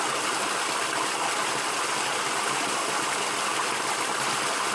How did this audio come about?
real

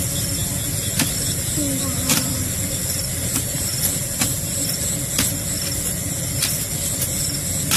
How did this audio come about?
real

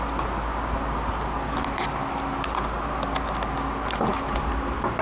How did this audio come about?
real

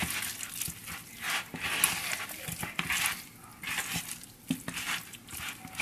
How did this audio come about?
real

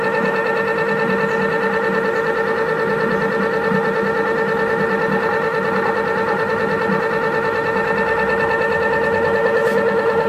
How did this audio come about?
real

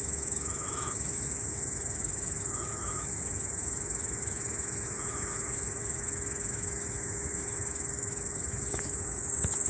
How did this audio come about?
fake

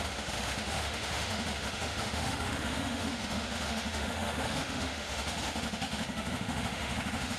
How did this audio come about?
fake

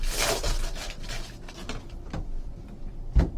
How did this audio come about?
real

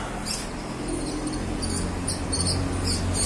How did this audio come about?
real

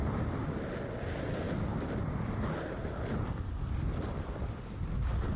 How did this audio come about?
real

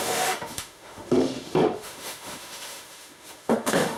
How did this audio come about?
fake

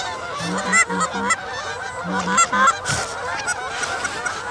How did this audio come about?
real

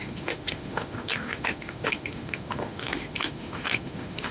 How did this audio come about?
fake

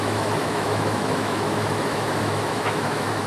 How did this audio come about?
fake